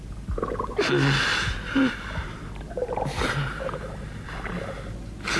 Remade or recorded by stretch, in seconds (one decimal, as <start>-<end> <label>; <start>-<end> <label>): 0.0-1.3 recorded; 1.3-4.5 remade; 4.5-5.4 recorded